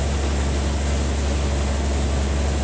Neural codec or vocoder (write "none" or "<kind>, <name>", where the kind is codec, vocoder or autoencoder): none